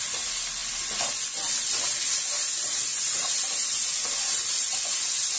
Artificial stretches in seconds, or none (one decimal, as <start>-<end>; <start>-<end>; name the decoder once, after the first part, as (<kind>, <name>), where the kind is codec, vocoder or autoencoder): none